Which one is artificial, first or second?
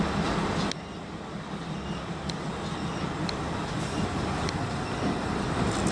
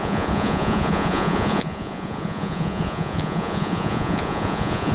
second